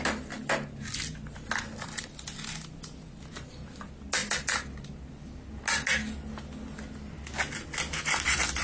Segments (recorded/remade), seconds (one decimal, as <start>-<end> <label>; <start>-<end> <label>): 0.0-8.6 recorded